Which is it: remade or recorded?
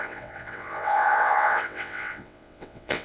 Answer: remade